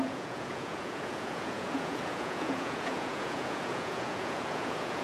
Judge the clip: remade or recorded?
remade